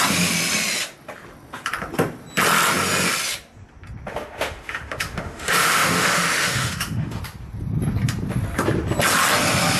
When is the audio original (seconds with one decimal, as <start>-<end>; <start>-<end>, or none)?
0.0-4.1; 7.2-9.8